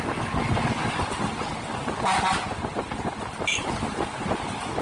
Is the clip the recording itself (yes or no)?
yes